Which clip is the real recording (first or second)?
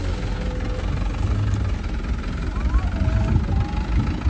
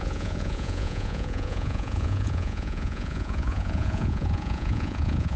first